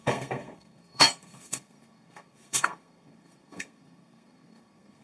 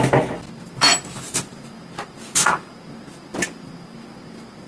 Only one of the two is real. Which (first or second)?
second